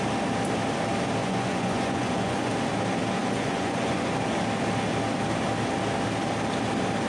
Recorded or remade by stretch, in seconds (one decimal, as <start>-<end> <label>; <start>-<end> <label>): 0.0-1.2 recorded; 1.2-2.5 remade; 2.5-3.2 recorded; 3.2-4.1 remade; 4.1-7.1 recorded